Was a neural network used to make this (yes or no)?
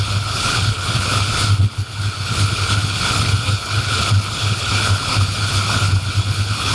yes